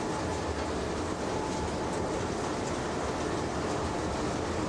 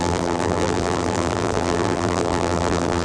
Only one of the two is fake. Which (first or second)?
second